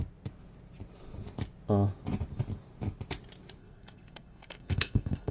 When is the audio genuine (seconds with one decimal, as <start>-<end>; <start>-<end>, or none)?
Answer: 0.0-3.6